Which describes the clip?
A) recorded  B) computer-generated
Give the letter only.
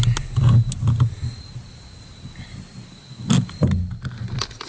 A